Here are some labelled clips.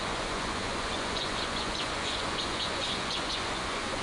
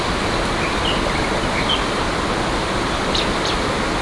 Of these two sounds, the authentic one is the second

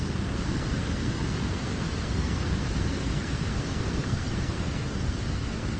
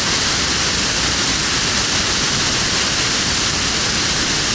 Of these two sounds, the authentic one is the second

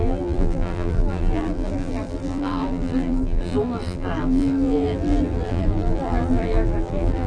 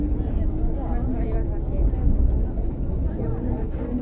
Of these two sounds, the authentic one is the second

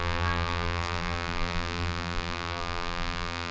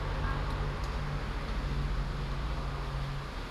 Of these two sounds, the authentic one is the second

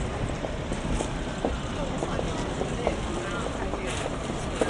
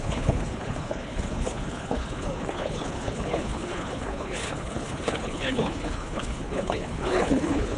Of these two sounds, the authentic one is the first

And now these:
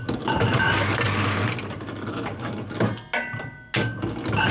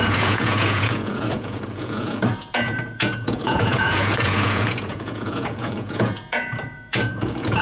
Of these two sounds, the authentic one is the first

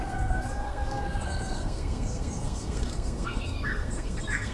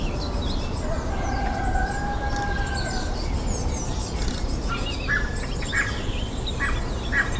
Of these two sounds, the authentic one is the second